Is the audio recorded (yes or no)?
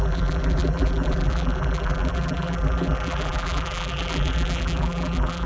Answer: no